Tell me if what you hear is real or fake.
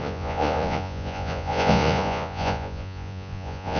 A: fake